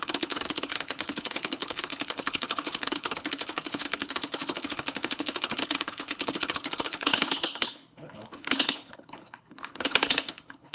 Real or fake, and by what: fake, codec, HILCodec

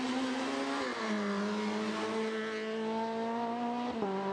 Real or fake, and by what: real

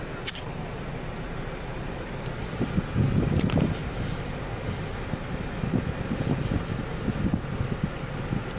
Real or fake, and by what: real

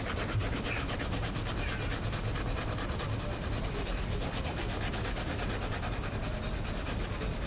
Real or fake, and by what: real